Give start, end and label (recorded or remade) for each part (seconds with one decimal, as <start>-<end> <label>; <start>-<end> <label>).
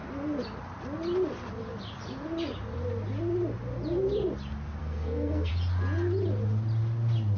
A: 0.0-4.8 recorded; 4.8-5.5 remade; 5.5-7.4 recorded